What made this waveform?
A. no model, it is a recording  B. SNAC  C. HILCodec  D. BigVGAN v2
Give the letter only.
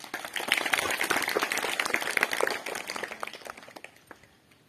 A